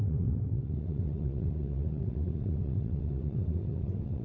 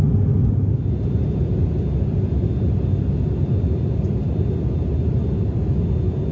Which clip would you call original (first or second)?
second